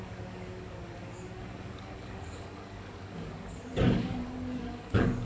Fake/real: fake